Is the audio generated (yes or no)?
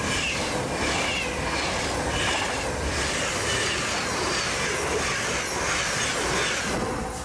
no